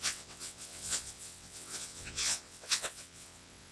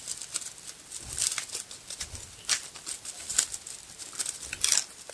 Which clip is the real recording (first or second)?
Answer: second